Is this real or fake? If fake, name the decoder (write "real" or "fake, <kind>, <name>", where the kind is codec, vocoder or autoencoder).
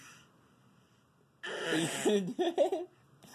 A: real